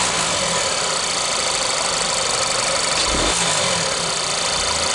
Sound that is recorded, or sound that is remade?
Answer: recorded